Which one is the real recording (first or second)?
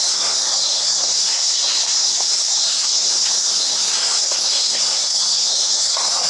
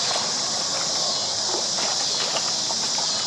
second